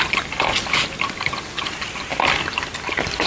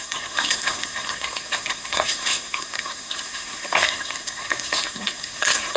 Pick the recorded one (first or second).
first